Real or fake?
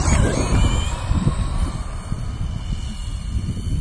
real